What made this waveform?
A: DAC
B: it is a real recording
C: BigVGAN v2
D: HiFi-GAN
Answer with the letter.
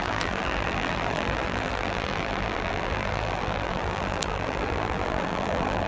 C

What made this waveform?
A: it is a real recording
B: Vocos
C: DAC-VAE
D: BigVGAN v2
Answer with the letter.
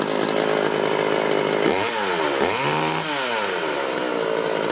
A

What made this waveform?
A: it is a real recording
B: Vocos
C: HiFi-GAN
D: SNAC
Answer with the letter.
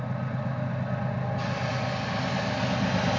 A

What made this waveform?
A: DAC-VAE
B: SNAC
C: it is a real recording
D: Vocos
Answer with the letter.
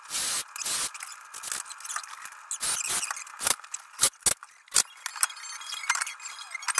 C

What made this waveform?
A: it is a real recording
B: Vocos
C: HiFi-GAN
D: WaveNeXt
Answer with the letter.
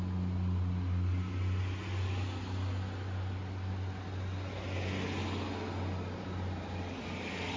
A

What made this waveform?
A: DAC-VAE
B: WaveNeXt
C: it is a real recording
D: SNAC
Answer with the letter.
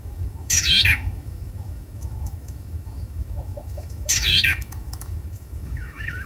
A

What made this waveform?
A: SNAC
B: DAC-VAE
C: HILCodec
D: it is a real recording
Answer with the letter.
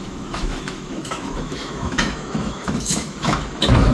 B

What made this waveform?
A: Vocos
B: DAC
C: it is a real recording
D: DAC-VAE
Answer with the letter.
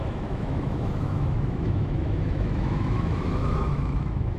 D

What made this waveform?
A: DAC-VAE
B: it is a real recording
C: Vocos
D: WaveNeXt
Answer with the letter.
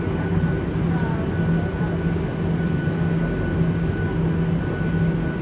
B